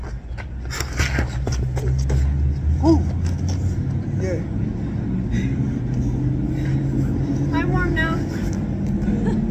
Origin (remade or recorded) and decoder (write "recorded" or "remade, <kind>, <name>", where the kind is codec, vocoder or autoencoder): recorded